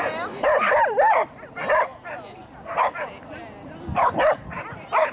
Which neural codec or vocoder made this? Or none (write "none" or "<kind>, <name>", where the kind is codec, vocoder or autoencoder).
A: vocoder, BigVGAN v2